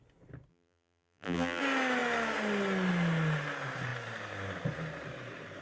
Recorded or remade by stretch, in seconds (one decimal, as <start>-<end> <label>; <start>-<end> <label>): 0.0-0.5 recorded; 0.5-1.6 remade; 1.6-5.6 recorded